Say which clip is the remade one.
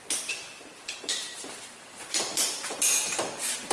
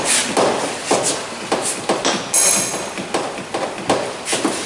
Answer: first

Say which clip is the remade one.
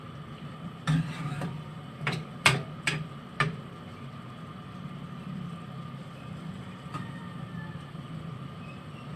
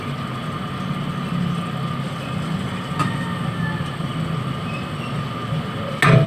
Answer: first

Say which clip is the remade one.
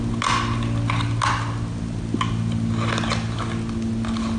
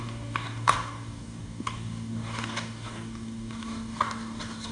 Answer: second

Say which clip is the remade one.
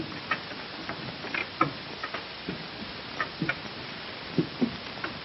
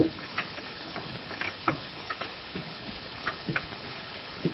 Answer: second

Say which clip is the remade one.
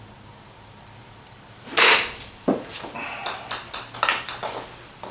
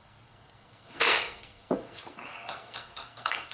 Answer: second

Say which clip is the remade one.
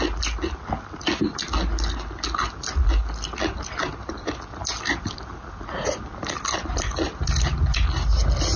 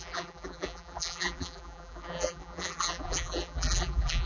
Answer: second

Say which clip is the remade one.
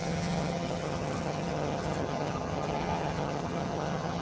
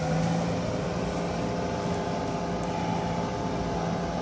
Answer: first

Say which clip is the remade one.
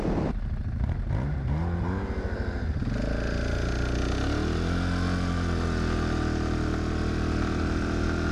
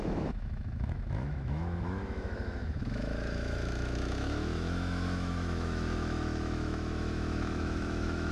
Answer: second